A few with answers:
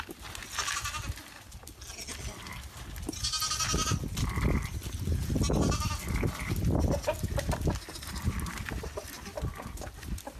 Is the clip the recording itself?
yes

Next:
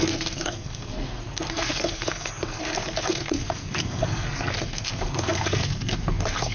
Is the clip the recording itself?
no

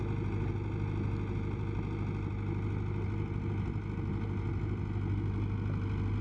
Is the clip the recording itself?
yes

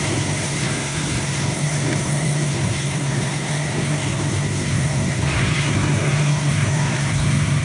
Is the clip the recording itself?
no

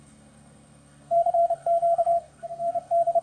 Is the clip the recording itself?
no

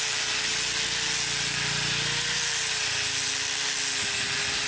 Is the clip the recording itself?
yes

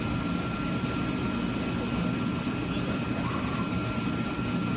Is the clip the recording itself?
yes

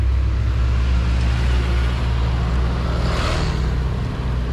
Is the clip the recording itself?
yes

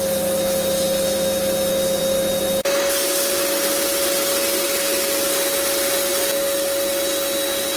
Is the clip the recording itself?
yes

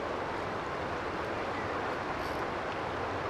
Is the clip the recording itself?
yes